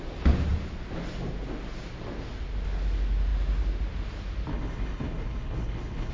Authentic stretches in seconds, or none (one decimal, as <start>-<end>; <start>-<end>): 0.0-4.5